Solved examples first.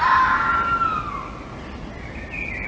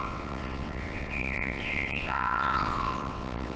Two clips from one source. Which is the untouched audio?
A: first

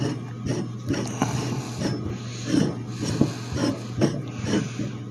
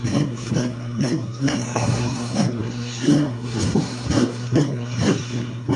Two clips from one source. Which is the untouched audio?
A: first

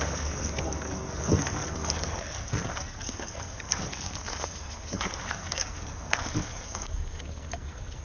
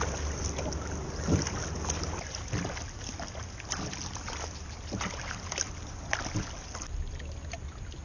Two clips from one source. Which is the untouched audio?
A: second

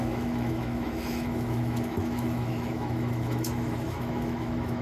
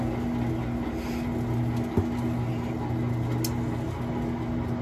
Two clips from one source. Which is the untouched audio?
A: second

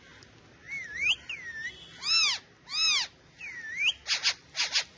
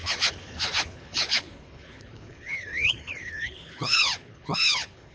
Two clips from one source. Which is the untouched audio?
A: first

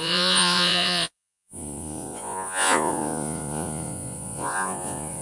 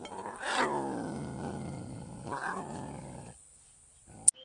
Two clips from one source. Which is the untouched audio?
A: second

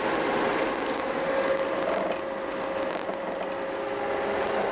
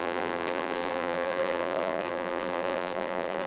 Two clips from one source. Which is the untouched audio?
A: first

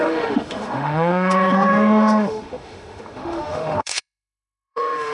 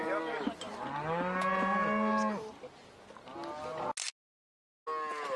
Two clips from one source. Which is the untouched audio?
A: second